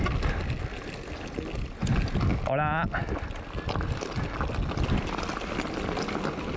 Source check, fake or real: real